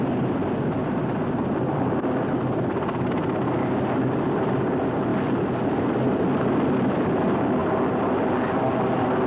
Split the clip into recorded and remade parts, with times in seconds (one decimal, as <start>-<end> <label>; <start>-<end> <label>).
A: 0.0-9.3 recorded